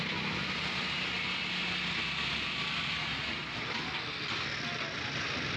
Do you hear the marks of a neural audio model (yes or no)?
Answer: no